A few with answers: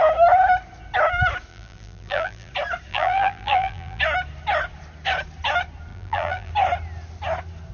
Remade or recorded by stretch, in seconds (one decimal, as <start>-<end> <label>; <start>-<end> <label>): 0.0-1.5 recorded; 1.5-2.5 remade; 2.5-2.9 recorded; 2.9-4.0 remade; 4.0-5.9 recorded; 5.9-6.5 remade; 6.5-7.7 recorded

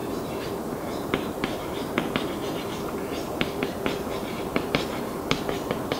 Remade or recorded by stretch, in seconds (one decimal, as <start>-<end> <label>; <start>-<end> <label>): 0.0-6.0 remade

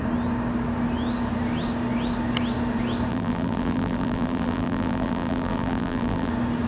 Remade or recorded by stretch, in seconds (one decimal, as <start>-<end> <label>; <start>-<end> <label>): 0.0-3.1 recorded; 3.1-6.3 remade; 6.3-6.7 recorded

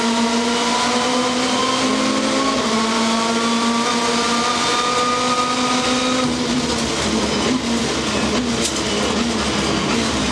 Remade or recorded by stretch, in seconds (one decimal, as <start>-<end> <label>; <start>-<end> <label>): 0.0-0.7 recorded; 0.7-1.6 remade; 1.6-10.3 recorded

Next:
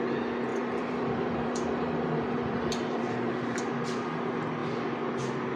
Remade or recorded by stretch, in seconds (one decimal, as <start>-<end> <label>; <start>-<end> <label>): 0.0-0.5 recorded; 0.5-3.6 remade; 3.6-5.6 recorded